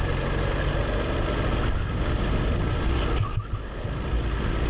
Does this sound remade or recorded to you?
recorded